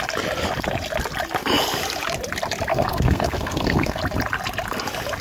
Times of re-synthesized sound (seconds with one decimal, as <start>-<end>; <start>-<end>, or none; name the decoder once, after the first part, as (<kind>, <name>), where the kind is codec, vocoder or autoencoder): 2.7-4.0 (codec, SNAC)